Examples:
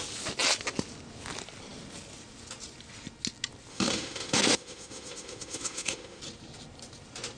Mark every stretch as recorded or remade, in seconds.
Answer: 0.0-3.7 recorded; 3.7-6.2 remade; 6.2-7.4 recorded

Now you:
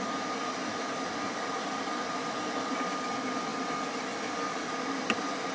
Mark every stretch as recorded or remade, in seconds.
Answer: 0.0-5.5 recorded

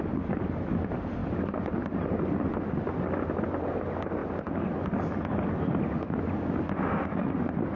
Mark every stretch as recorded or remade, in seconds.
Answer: 0.0-7.8 recorded

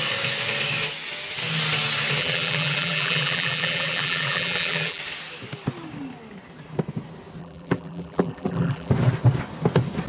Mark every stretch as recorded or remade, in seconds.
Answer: 0.0-2.2 recorded; 2.2-5.0 remade; 5.0-7.4 recorded; 7.4-8.9 remade; 8.9-10.1 recorded

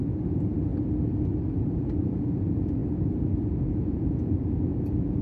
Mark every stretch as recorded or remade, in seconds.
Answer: 0.0-0.7 remade; 0.7-1.5 recorded; 1.5-2.8 remade; 2.8-3.6 recorded; 3.6-5.2 remade

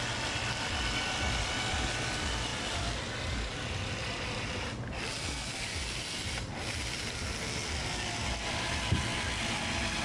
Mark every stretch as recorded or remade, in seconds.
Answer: 0.0-2.5 recorded; 2.5-7.1 remade; 7.1-10.0 recorded

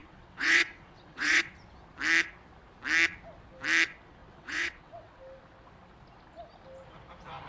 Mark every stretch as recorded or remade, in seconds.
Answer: 0.0-1.5 remade; 1.5-4.2 recorded; 4.2-5.2 remade; 5.2-7.5 recorded